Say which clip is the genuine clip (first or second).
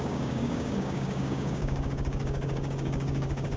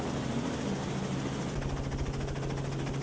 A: second